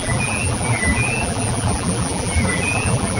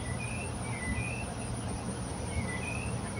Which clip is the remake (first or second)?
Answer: first